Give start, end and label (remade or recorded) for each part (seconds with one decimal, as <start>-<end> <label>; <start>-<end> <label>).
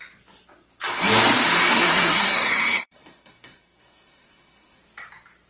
0.0-1.7 recorded; 1.7-4.8 remade; 4.8-5.5 recorded